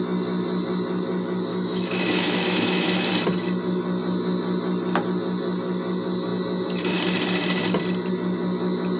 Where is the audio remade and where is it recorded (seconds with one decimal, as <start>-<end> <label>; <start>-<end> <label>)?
0.0-1.5 recorded; 1.5-3.1 remade; 3.1-9.0 recorded